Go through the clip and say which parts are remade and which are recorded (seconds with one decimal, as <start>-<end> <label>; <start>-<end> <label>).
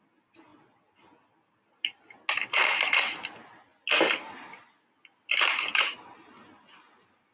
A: 0.0-7.3 recorded